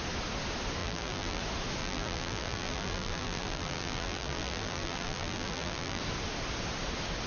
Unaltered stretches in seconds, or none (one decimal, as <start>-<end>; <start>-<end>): 0.0-0.8; 1.4-1.8; 6.0-7.3